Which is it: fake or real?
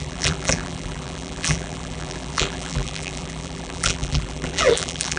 fake